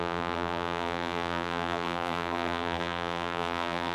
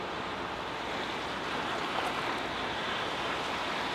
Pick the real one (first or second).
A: second